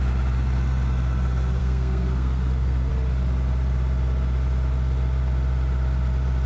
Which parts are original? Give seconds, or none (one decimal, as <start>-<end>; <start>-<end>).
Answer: 0.0-1.6; 2.9-6.5